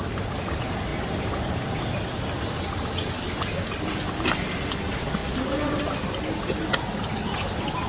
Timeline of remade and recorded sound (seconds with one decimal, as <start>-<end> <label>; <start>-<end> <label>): 0.0-7.9 recorded